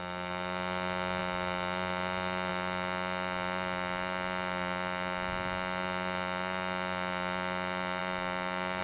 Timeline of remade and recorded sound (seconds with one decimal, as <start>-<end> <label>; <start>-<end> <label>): 0.0-8.8 recorded